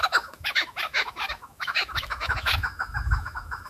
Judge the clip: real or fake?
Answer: fake